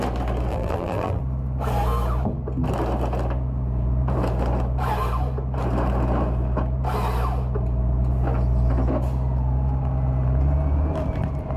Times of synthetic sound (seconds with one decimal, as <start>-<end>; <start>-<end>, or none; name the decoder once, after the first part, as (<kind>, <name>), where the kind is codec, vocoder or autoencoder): 0.5-1.2 (vocoder, BigVGAN v2)

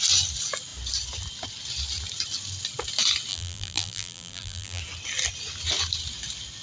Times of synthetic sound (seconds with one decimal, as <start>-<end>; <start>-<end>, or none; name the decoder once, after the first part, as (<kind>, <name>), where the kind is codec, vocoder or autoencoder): 3.3-4.8 (vocoder, BigVGAN v2)

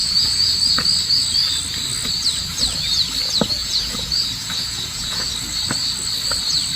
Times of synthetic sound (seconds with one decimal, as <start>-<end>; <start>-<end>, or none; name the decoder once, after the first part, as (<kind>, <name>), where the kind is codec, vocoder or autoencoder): 0.0-0.6 (vocoder, Vocos); 3.6-5.3

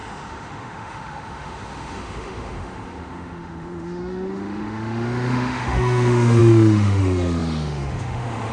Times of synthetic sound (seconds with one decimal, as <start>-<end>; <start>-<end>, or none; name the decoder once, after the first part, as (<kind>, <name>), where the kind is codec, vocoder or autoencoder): 0.0-8.5 (autoencoder, DAC-VAE)

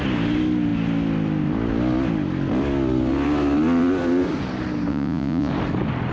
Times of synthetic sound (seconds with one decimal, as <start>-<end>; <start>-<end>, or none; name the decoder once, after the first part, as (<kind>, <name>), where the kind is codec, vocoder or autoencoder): 4.9-5.5 (vocoder, Vocos)

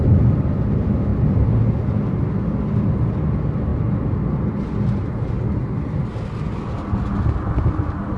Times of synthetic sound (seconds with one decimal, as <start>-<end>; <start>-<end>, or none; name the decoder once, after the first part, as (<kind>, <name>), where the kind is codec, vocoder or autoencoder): none

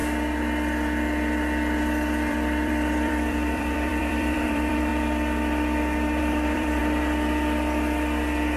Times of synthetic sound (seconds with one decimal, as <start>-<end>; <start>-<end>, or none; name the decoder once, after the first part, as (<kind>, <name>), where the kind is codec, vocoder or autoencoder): 2.3-4.9 (vocoder, BigVGAN v2); 6.2-6.8